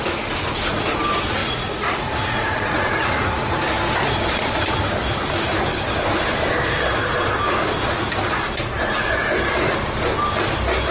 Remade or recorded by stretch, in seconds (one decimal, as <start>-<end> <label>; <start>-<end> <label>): 0.0-1.4 recorded; 1.4-3.5 remade; 3.5-10.9 recorded